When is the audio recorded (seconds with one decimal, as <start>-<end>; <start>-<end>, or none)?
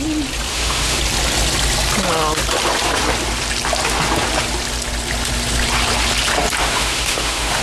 0.0-0.5; 1.0-6.6